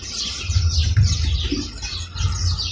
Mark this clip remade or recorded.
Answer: recorded